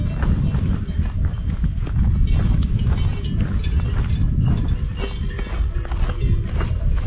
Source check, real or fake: real